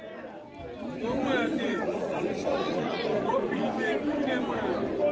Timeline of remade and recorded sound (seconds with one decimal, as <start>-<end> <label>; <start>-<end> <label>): 0.0-1.5 recorded; 1.5-3.6 remade; 3.6-5.1 recorded